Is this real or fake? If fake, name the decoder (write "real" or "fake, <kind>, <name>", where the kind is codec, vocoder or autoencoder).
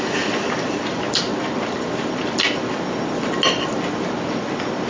real